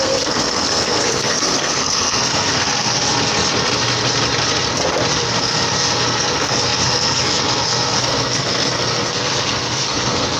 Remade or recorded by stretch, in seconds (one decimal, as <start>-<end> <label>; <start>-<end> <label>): 0.0-3.1 remade; 3.1-5.1 recorded; 5.1-10.4 remade